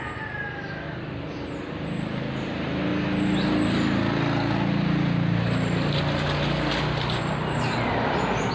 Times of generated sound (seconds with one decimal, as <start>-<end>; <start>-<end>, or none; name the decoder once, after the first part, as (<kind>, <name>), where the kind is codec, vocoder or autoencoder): none